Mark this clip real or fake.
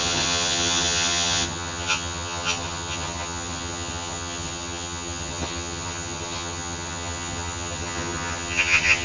fake